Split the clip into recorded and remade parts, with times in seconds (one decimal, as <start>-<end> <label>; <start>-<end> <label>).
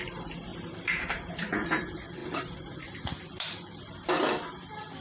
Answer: 0.0-0.5 recorded; 0.5-1.3 remade; 1.3-5.0 recorded